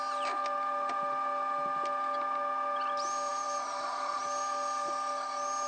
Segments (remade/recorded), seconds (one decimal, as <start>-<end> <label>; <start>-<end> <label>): 0.0-3.3 recorded; 3.3-4.2 remade; 4.2-5.7 recorded